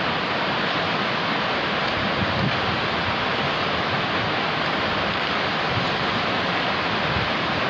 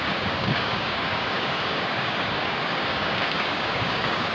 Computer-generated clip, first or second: second